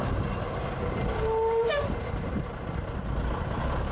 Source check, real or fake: real